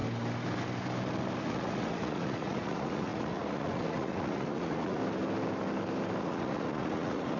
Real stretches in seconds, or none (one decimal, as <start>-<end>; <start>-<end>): 0.0-1.4; 5.0-6.2